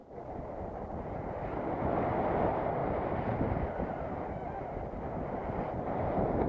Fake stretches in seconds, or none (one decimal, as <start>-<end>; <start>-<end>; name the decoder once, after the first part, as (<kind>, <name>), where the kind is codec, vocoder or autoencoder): none